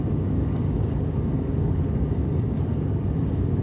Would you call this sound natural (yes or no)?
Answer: no